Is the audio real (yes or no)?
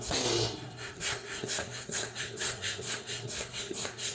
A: no